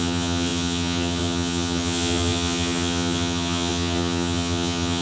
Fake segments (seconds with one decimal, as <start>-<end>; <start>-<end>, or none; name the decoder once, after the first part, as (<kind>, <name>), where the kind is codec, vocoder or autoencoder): 0.0-5.0 (vocoder, HiFi-GAN)